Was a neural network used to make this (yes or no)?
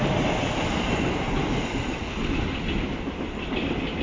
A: no